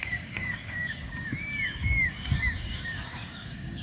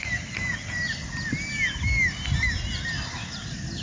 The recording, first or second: second